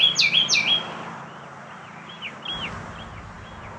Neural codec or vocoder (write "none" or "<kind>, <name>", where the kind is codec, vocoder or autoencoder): none